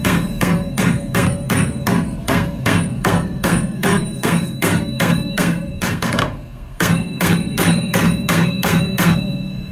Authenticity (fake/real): fake